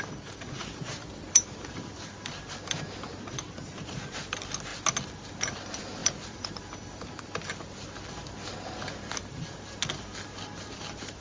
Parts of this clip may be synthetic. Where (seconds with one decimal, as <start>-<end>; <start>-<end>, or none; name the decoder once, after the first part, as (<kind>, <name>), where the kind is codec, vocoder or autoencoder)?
0.6-4.2 (vocoder, BigVGAN v2); 6.0-6.6